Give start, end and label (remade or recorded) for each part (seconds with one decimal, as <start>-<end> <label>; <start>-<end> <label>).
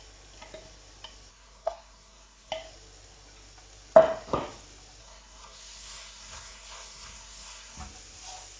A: 0.0-1.3 recorded; 1.3-2.5 remade; 2.5-5.0 recorded; 5.0-7.8 remade; 7.8-8.6 recorded